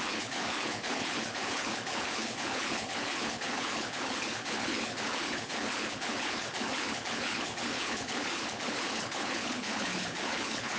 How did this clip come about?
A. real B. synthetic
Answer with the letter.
B